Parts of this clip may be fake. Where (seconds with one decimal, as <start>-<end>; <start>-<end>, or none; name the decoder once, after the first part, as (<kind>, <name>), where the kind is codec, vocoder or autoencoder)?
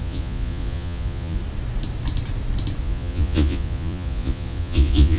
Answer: 0.0-1.4 (vocoder, Vocos); 2.8-5.2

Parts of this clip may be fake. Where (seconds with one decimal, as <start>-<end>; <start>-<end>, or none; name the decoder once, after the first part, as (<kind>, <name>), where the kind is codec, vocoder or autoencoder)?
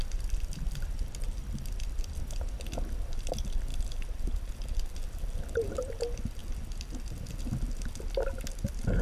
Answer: none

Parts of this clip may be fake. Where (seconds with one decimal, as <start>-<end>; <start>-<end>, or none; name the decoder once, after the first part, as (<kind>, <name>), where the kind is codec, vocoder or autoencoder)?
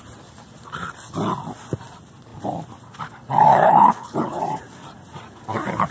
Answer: 3.5-4.4 (codec, HILCodec)